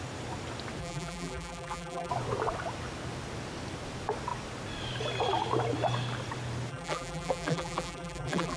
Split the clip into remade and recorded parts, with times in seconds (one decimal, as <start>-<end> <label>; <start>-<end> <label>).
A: 0.0-0.8 recorded; 0.8-2.1 remade; 2.1-6.7 recorded; 6.7-8.6 remade